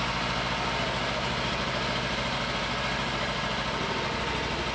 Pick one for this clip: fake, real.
real